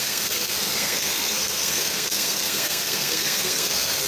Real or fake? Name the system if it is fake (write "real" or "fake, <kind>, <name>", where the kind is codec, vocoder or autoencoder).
fake, codec, SNAC